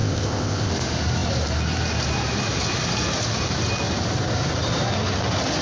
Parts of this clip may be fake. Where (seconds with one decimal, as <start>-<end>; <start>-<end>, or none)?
0.0-0.7